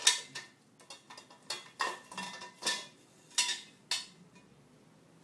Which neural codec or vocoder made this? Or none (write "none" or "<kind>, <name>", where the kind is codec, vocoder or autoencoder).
none